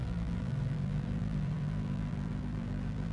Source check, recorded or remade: remade